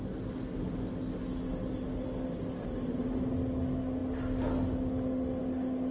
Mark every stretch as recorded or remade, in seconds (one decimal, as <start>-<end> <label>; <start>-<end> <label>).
0.0-5.9 recorded